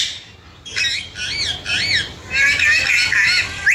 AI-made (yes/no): no